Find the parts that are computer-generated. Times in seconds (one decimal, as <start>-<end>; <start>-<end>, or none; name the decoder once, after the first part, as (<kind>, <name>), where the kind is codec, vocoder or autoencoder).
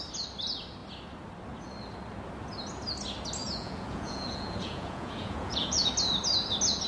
3.4-5.9 (vocoder, Vocos)